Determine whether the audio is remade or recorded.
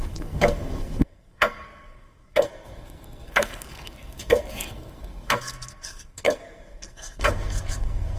remade